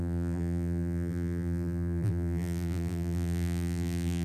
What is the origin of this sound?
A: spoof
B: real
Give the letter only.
A